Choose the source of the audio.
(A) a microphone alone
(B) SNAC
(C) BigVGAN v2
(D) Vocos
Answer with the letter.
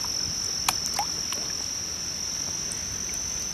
A